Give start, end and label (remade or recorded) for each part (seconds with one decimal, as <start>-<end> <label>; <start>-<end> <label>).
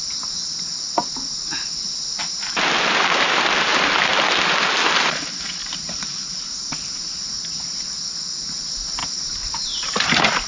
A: 0.0-5.6 recorded; 5.6-7.0 remade; 7.0-9.0 recorded; 9.0-10.5 remade